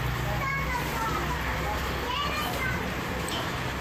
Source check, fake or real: real